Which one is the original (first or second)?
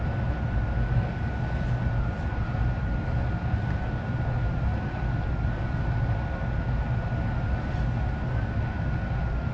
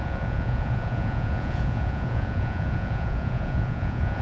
first